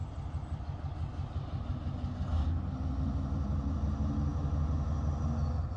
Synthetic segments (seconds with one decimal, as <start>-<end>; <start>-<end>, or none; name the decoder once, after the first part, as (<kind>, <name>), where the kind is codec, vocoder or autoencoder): 0.0-0.7 (vocoder, BigVGAN v2); 1.1-1.7